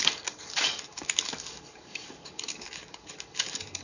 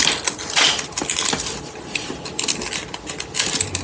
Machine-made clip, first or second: first